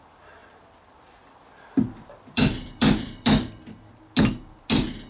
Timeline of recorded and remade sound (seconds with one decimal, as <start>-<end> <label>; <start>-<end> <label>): 0.0-0.4 recorded; 0.4-3.5 remade; 3.5-5.1 recorded